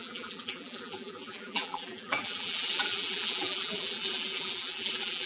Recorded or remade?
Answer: remade